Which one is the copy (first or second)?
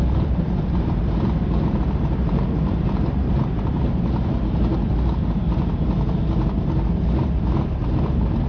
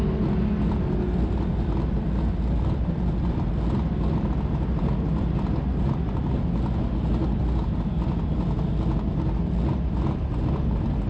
first